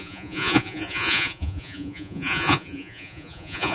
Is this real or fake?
fake